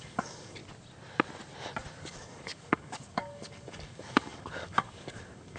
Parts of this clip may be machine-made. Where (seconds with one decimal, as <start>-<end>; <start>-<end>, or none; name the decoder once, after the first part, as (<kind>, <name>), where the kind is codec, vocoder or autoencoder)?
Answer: 0.0-0.6 (codec, DAC); 2.0-5.6